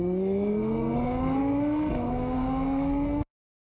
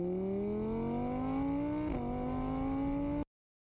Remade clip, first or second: first